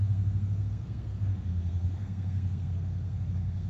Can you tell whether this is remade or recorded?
remade